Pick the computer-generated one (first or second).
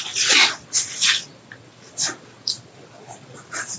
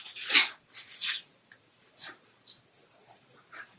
second